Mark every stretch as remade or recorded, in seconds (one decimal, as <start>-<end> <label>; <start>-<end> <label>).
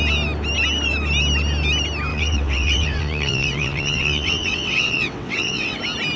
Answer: 0.0-2.1 recorded; 2.1-5.8 remade; 5.8-6.2 recorded